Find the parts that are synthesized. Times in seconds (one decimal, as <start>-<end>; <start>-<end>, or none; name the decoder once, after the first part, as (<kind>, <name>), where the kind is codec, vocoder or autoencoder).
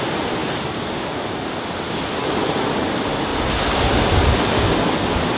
3.3-3.8 (vocoder, BigVGAN v2)